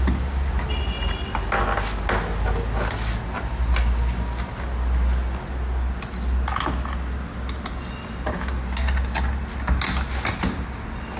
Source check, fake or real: real